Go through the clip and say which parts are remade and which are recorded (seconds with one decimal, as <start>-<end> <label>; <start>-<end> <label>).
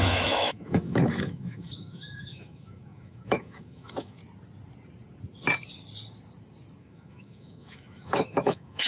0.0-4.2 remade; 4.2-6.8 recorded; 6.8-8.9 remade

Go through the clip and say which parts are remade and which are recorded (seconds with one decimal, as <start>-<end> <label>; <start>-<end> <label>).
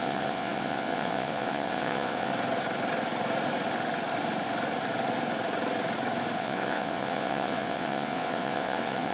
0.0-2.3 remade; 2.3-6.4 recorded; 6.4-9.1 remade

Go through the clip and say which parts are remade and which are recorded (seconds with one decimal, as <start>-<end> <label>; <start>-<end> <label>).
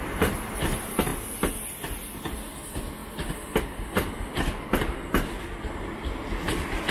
0.0-6.9 recorded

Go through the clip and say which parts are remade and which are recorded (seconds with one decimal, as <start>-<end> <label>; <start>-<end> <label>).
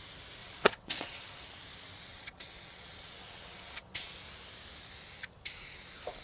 0.0-0.4 recorded; 0.4-1.5 remade; 1.5-2.1 recorded; 2.1-4.1 remade; 4.1-6.2 recorded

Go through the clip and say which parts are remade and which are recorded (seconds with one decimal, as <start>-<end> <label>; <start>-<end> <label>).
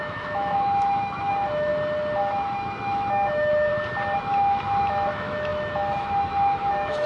0.0-1.7 remade; 1.7-2.2 recorded; 2.2-3.7 remade; 3.7-4.2 recorded; 4.2-7.1 remade